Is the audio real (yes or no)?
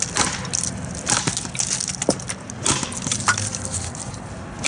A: yes